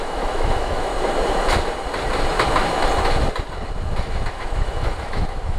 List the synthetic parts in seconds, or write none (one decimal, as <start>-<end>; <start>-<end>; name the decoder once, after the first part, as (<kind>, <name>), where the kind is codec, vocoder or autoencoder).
0.0-0.9 (autoencoder, DAC-VAE); 4.3-5.6

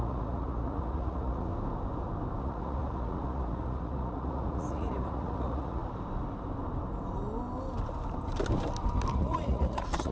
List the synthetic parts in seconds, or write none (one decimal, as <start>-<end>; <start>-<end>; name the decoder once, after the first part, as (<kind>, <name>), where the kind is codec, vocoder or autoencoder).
0.0-1.5 (vocoder, Vocos); 2.4-5.8; 9.1-10.1

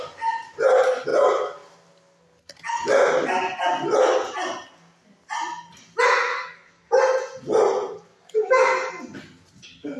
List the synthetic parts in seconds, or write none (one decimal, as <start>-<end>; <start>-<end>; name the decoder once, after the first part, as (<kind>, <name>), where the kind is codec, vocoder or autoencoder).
6.3-7.0 (codec, DAC); 8.1-8.9

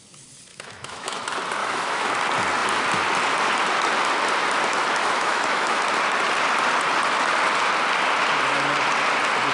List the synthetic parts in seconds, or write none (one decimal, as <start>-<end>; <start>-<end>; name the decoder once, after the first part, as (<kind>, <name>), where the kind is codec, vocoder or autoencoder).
0.5-1.2 (autoencoder, DAC-VAE); 1.6-2.1; 5.0-5.8

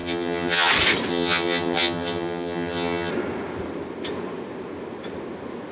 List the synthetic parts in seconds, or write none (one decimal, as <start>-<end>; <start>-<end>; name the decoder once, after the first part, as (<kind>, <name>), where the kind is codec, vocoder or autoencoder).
0.0-0.7 (vocoder, HiFi-GAN); 1.1-3.1

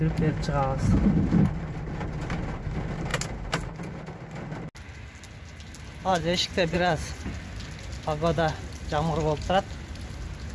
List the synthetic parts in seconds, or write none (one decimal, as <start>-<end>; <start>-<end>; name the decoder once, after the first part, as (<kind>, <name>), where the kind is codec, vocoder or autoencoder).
6.1-7.3 (vocoder, Vocos)

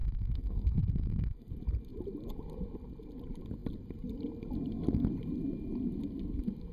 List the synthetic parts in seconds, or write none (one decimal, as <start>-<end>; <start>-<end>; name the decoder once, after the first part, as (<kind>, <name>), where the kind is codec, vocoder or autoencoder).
0.0-1.5 (codec, SNAC)

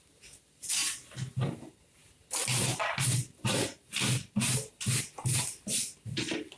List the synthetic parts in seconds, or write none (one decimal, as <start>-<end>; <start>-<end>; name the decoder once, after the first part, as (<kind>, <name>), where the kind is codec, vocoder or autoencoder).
none